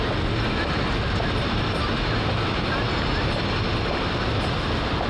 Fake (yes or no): no